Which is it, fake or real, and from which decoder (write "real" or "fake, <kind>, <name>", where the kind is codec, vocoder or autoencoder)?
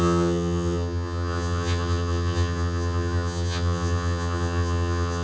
fake, vocoder, HiFi-GAN